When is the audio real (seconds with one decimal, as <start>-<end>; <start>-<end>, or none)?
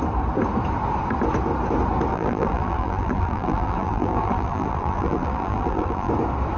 0.0-2.1; 6.1-6.6